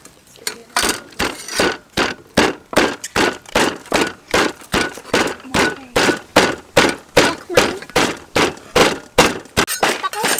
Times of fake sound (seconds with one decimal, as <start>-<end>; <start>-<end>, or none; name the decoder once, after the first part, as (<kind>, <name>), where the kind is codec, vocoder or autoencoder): 0.0-0.6 (vocoder, BigVGAN v2); 1.2-2.2; 3.1-6.3; 7.6-8.8; 9.8-10.4